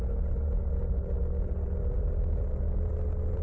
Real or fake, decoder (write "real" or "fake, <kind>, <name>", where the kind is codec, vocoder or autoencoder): real